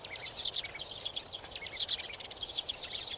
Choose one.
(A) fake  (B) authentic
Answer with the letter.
A